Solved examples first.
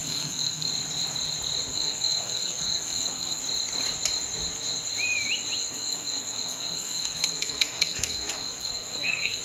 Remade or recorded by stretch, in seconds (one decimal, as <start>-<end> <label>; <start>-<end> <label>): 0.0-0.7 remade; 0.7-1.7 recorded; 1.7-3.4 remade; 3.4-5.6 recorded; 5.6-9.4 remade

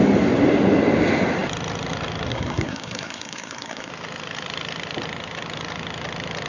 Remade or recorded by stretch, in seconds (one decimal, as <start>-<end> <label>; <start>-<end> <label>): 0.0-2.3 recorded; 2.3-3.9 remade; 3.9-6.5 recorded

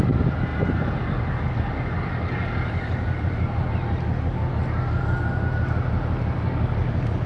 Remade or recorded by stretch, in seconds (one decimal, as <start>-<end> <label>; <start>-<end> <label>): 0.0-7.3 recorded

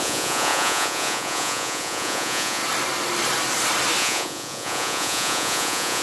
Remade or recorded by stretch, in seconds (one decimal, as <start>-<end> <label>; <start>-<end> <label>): 0.0-2.6 remade; 2.6-4.0 recorded; 4.0-6.0 remade